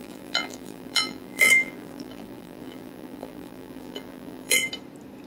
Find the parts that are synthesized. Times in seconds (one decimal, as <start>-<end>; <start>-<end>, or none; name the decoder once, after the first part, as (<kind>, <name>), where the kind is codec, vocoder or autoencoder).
0.0-4.6 (vocoder, BigVGAN v2)